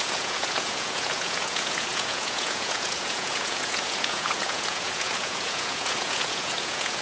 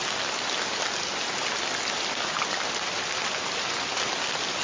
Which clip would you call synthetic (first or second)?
first